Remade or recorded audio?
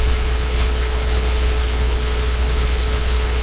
remade